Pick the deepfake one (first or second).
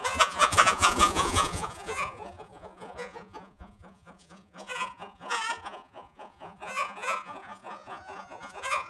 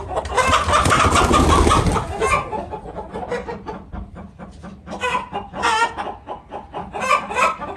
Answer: first